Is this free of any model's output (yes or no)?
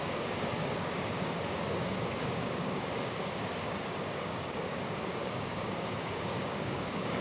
no